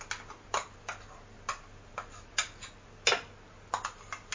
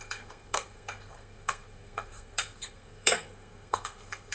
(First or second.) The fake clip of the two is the second